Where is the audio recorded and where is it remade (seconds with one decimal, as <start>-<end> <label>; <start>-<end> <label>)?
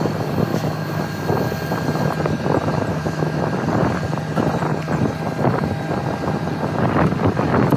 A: 0.0-0.5 recorded; 0.5-1.0 remade; 1.0-2.9 recorded; 2.9-3.4 remade; 3.4-7.8 recorded